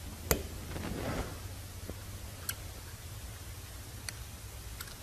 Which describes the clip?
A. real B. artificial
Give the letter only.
A